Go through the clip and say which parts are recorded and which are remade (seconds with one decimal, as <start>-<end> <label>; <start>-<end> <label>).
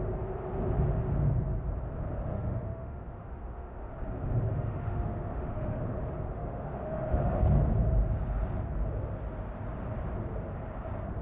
0.0-2.3 recorded; 2.3-3.9 remade; 3.9-4.5 recorded; 4.5-5.8 remade; 5.8-6.3 recorded; 6.3-7.2 remade; 7.2-11.2 recorded